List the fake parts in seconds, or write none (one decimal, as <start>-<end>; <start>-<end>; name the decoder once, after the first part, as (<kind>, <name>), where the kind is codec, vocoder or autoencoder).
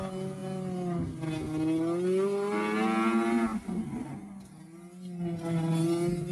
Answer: none